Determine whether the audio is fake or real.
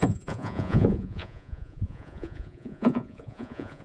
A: fake